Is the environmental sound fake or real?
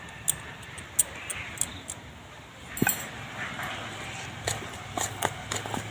real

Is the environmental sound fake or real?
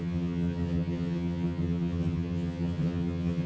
fake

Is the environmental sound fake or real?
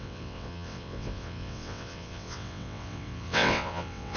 fake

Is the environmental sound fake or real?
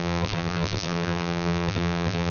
fake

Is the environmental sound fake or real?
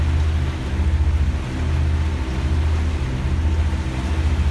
real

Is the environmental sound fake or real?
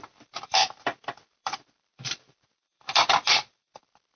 fake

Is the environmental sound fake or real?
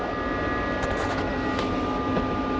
real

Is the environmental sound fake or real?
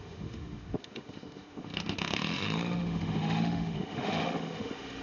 fake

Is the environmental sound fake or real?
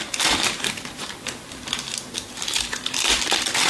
real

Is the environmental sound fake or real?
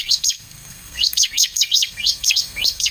fake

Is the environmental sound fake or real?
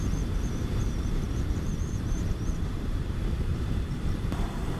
fake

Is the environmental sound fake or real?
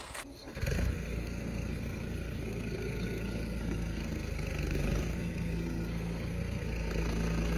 fake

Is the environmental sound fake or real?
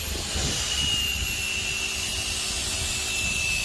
real